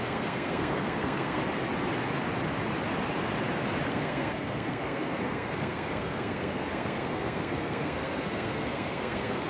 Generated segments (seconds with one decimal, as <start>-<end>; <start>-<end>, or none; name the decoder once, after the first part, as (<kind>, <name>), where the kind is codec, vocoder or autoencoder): 0.0-1.4 (codec, SNAC); 3.9-9.5